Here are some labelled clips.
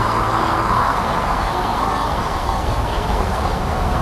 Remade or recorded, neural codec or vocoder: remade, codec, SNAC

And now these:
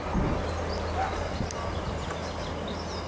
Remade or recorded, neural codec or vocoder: recorded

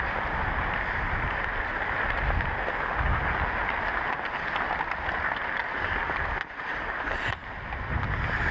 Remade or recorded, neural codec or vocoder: recorded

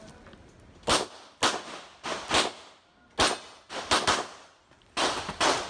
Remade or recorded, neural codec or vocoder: recorded